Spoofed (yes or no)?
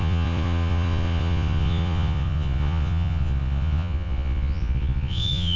yes